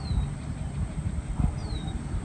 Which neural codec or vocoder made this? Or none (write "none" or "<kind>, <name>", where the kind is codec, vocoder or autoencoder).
none